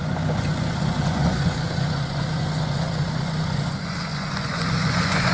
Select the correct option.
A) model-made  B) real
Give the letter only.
A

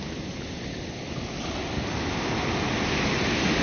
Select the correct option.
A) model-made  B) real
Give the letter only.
B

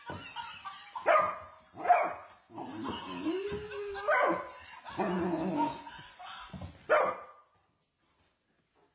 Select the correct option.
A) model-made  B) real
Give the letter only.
B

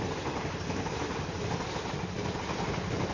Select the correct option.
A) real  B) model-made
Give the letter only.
A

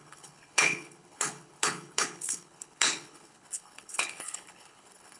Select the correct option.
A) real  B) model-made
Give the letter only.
B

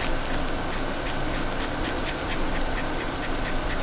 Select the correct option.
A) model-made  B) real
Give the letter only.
B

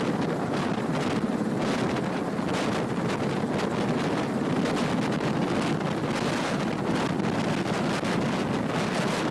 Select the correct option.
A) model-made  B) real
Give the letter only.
B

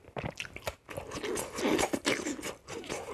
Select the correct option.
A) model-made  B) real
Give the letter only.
B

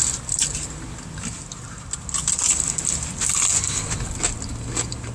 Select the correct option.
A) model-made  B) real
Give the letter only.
B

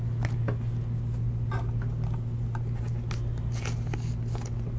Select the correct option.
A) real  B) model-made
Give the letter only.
A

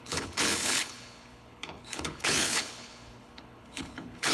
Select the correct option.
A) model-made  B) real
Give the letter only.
A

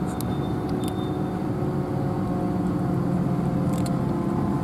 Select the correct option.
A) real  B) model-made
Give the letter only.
A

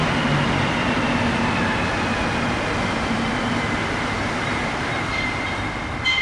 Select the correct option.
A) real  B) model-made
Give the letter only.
A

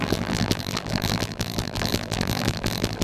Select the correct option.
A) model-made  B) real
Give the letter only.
A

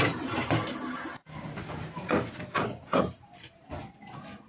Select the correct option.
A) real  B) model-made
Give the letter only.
A